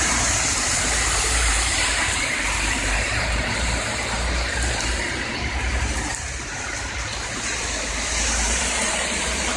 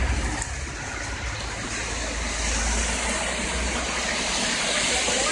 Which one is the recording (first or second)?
second